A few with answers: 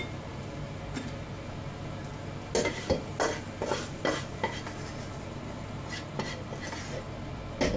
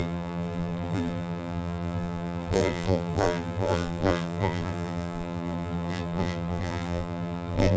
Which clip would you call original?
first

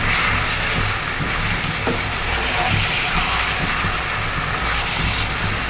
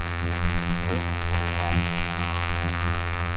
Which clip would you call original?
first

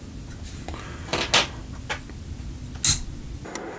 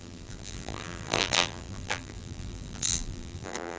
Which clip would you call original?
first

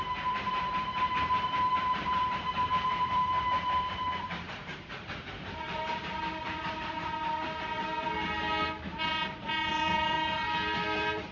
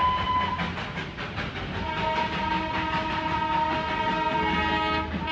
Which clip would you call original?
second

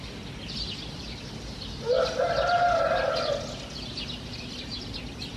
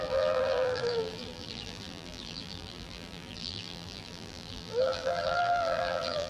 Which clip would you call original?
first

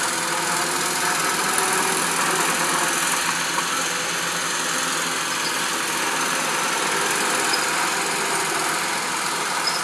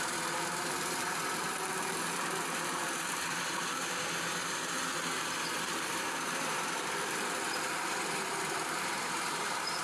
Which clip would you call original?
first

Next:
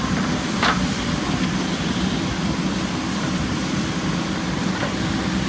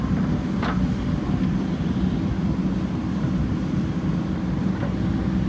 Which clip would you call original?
second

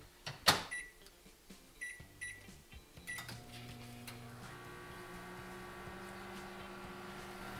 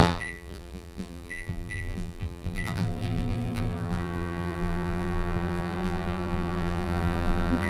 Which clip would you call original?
first